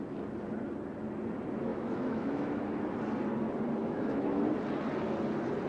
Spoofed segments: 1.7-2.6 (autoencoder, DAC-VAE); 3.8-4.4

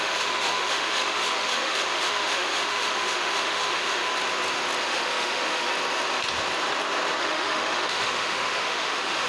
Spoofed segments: 0.0-4.1 (autoencoder, DAC-VAE); 4.8-5.7; 7.2-9.3

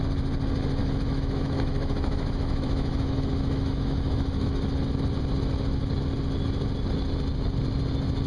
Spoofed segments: 0.8-4.6 (autoencoder, DAC-VAE)

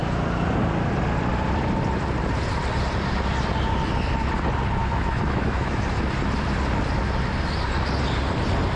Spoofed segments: 4.8-5.8 (autoencoder, DAC-VAE)

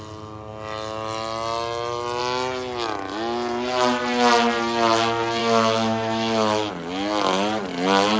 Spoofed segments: 5.4-6.7 (autoencoder, DAC-VAE)

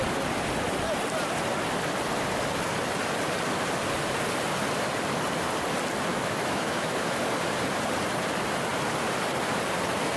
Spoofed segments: 6.1-7.2 (autoencoder, DAC-VAE)

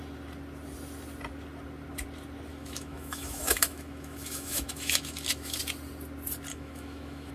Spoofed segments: 2.5-5.6 (autoencoder, DAC-VAE); 6.5-7.3

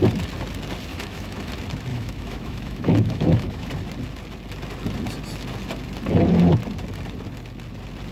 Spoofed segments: 0.9-1.5 (autoencoder, DAC-VAE); 1.9-3.7